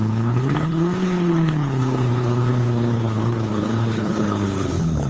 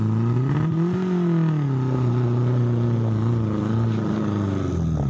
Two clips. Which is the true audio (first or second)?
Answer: second